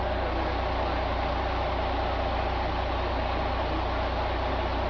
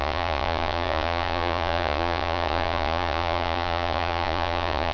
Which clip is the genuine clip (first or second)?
first